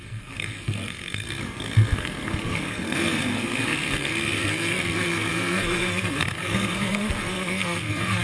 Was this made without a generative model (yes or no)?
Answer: no